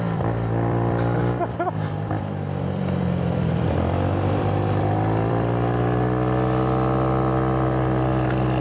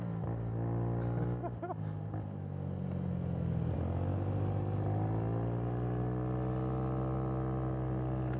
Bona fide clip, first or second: second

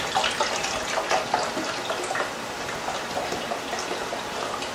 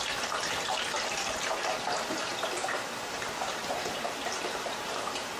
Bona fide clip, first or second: first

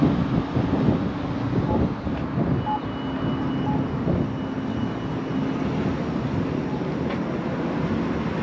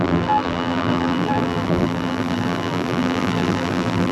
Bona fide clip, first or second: first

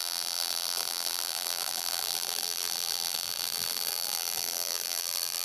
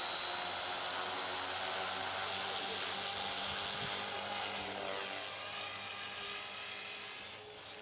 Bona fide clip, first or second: second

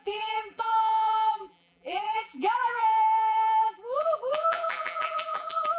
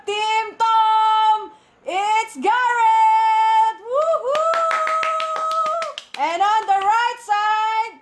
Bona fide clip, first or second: second